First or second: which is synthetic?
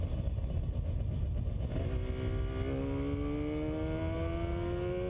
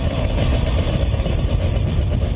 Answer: second